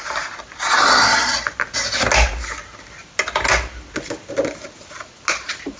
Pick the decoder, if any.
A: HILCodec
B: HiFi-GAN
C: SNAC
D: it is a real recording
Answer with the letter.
D